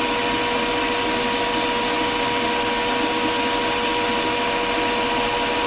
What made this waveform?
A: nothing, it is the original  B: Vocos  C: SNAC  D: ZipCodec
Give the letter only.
A